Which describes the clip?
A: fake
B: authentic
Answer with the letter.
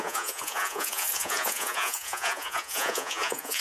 A